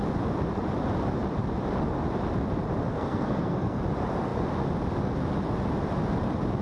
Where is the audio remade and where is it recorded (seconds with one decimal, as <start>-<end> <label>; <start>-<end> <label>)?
0.0-2.9 recorded; 2.9-3.8 remade; 3.8-6.6 recorded